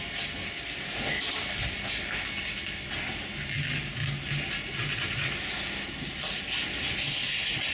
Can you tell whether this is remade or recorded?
recorded